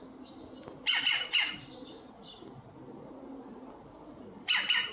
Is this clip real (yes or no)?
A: yes